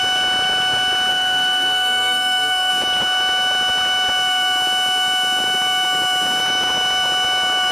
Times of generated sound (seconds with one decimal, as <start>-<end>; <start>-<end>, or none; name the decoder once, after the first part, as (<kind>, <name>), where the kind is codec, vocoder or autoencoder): 1.1-2.7 (codec, SNAC)